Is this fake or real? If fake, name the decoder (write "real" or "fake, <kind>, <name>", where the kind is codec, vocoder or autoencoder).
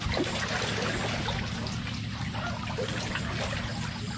real